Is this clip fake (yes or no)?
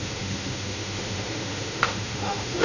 yes